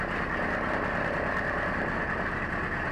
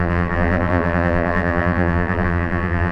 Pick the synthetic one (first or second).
second